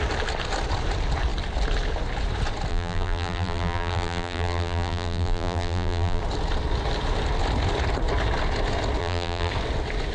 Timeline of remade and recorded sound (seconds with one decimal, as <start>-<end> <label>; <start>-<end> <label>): 0.0-2.7 recorded; 2.7-6.2 remade; 6.2-9.0 recorded; 9.0-9.5 remade; 9.5-10.1 recorded